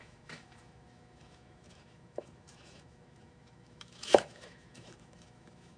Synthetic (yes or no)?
yes